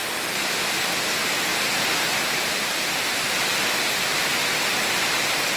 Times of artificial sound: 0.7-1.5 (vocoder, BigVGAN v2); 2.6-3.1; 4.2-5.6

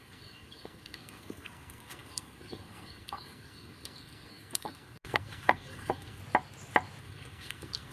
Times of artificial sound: 0.0-6.2 (codec, SNAC); 7.0-7.9

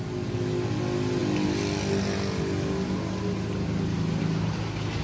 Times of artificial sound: none

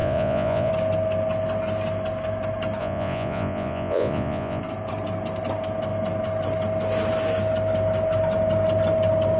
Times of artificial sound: 0.0-0.7 (vocoder, Vocos); 2.8-4.6

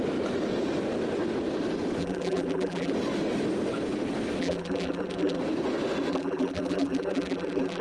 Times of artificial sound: 2.0-2.9 (vocoder, BigVGAN v2); 4.4-5.4; 6.1-7.8

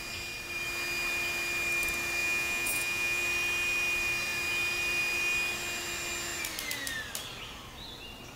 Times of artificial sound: 2.2-3.2 (vocoder, Vocos)